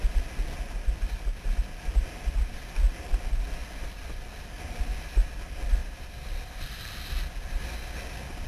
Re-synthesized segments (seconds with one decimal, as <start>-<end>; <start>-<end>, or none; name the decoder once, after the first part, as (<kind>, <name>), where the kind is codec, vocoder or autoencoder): 3.6-4.4 (vocoder, BigVGAN v2); 5.8-6.6